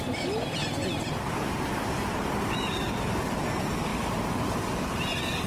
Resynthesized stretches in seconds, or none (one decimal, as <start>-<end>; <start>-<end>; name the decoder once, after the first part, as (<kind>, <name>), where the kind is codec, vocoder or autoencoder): none